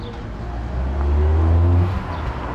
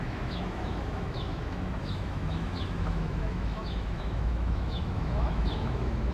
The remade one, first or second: second